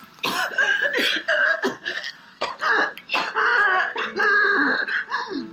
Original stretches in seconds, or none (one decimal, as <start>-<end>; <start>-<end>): 0.0-1.4; 2.5-5.5